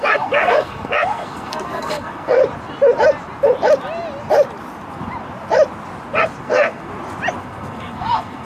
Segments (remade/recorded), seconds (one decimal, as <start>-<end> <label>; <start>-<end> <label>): 0.0-2.4 remade; 2.4-6.4 recorded; 6.4-6.9 remade; 6.9-7.4 recorded; 7.4-8.4 remade

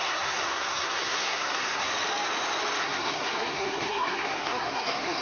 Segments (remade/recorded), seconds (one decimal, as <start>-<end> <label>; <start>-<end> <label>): 0.0-1.9 remade; 1.9-2.8 recorded; 2.8-5.2 remade

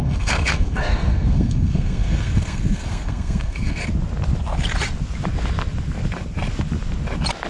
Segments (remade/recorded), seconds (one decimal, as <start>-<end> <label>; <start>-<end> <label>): 0.0-3.8 remade; 3.8-7.5 recorded

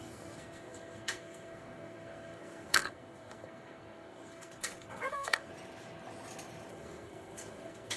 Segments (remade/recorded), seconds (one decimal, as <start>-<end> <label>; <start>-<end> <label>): 0.0-5.5 remade; 5.5-6.7 recorded; 6.7-8.0 remade

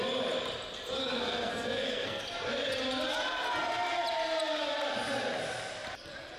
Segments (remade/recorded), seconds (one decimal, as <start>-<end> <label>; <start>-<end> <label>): 0.0-1.0 recorded; 1.0-2.2 remade; 2.2-6.4 recorded

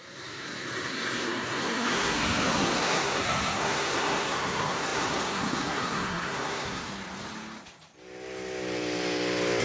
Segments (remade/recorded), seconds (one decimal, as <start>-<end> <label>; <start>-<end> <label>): 0.0-6.9 remade; 6.9-9.6 recorded

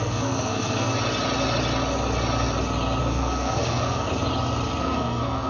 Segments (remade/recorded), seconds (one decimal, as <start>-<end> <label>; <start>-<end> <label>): 0.0-0.9 remade; 0.9-3.0 recorded; 3.0-4.1 remade; 4.1-4.8 recorded; 4.8-5.5 remade